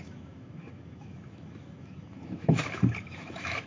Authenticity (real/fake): fake